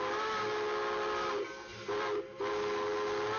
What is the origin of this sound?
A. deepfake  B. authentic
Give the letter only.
B